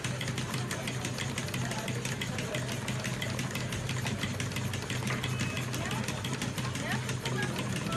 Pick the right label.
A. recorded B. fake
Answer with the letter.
A